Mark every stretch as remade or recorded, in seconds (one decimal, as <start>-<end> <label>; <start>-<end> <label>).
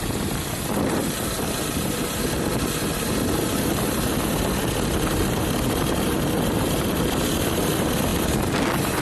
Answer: 0.0-9.0 recorded